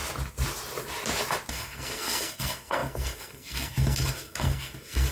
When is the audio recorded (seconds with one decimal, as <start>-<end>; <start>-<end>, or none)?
0.0-1.5

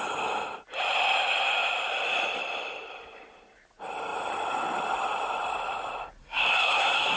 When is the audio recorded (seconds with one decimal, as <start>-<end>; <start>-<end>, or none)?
0.0-6.2

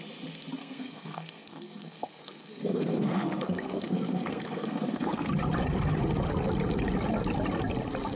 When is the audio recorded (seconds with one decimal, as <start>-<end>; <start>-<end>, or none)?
0.0-0.6; 5.3-8.2

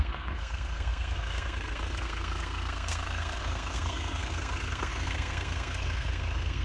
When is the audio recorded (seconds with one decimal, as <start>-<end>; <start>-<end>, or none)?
none

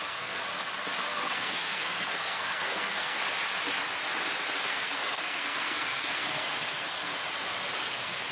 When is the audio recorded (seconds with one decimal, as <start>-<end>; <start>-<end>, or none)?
0.4-1.1; 3.2-4.7; 7.1-7.8

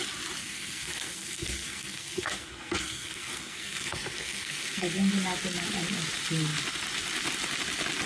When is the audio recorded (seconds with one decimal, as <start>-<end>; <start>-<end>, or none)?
0.0-0.4; 5.1-8.1